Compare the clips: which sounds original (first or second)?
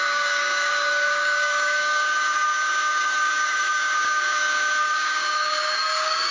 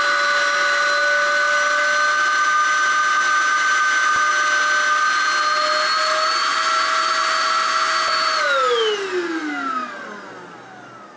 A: second